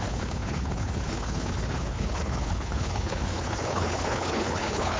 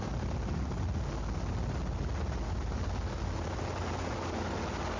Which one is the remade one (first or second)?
first